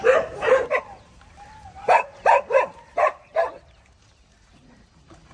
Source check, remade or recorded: remade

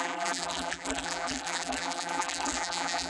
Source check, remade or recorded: remade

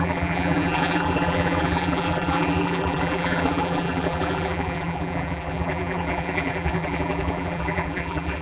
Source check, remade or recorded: remade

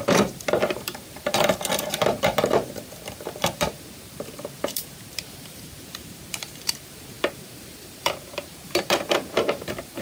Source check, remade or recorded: remade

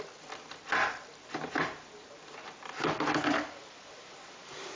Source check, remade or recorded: remade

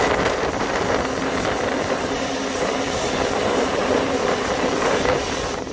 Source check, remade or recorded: remade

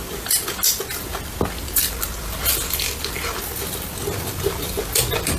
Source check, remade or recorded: recorded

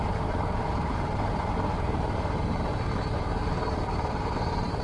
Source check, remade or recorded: remade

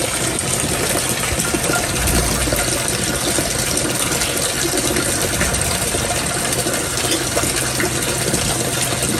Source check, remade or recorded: recorded